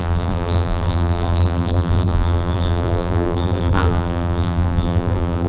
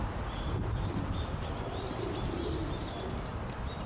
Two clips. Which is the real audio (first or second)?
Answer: second